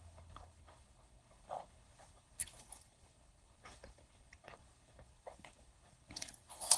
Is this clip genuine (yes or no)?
no